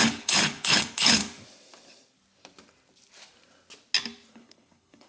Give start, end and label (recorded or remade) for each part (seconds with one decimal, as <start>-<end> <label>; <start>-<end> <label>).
0.0-1.2 remade; 1.2-4.3 recorded; 4.3-5.1 remade